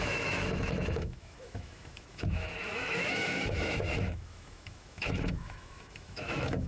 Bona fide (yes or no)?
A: no